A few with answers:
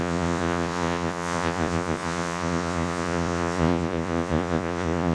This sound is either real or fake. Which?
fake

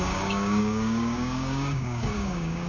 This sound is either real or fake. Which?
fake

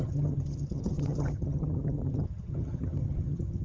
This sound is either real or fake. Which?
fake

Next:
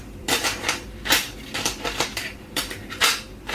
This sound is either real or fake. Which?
fake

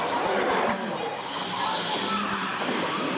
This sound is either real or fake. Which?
real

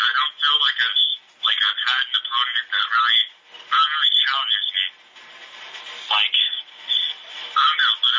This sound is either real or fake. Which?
real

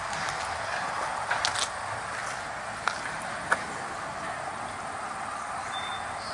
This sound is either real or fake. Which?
real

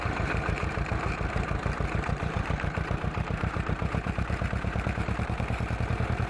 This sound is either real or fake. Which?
fake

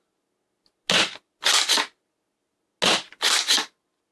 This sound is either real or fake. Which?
real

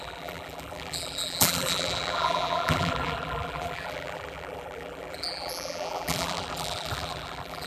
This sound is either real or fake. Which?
fake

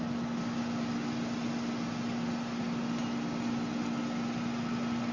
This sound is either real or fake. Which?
real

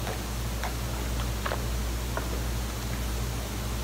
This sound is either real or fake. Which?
real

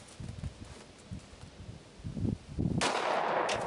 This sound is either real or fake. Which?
real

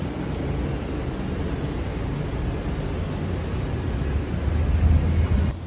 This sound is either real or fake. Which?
real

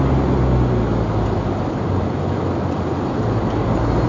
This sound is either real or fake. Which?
real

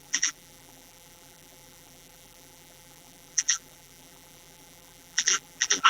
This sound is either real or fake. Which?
fake